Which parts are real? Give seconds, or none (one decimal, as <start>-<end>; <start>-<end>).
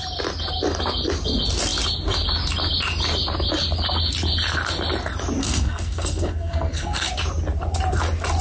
0.0-5.4; 7.1-8.4